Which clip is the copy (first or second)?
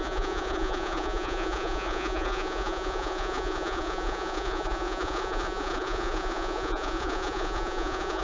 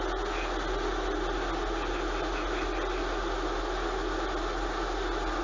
first